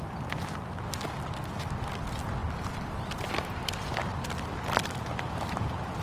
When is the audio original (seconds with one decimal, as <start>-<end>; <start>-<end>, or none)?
0.0-6.0